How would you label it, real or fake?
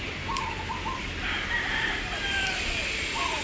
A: real